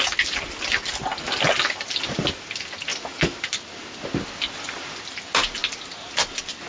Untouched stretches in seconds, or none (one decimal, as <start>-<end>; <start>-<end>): 0.0-6.7